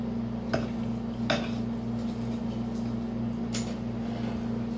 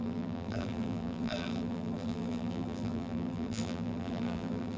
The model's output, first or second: second